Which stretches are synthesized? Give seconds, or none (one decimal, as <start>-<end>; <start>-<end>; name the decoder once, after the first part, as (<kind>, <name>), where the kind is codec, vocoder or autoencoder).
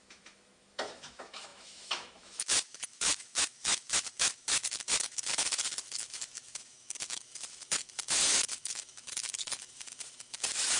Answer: 0.0-10.8 (autoencoder, DAC-VAE)